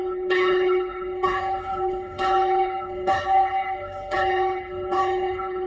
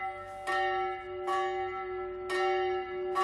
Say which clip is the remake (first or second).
first